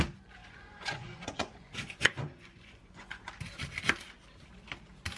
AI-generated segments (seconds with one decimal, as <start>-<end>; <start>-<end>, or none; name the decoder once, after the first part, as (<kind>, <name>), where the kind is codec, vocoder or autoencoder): 0.4-3.3 (vocoder, Vocos)